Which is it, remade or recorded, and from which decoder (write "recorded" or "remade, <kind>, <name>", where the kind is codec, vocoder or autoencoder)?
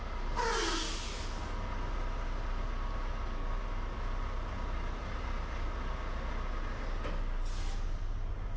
recorded